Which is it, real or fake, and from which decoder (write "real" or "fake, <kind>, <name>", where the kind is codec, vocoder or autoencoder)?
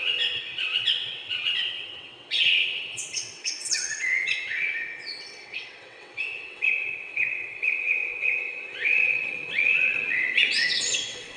fake, vocoder, WaveNeXt